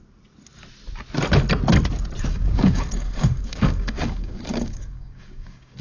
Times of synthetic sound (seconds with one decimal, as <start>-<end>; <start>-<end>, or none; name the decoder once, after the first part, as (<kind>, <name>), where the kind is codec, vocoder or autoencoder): 2.3-5.8 (codec, DAC)